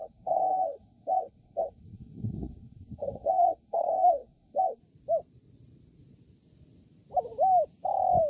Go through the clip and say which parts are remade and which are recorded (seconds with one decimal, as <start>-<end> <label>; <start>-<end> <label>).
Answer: 0.0-4.8 remade; 4.8-8.3 recorded